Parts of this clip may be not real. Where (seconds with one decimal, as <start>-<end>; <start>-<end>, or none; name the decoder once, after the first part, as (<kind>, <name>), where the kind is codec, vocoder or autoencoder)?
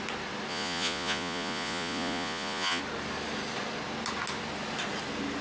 0.5-2.8 (vocoder, Vocos)